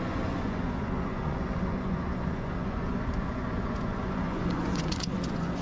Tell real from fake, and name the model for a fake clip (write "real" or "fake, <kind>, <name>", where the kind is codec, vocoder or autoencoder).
fake, vocoder, Vocos